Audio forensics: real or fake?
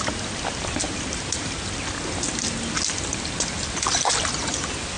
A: real